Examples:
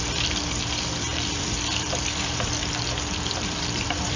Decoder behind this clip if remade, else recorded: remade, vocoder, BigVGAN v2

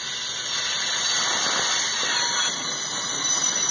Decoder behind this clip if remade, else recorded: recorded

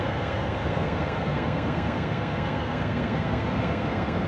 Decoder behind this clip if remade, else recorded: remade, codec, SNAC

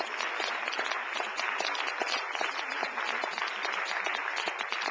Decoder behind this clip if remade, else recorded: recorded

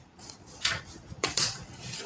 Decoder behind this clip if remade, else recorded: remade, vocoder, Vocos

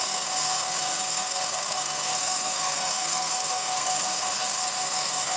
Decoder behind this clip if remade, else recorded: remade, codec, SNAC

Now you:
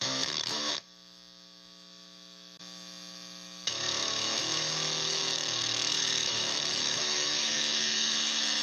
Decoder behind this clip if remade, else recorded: remade, autoencoder, DAC-VAE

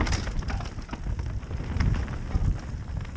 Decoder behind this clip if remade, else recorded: recorded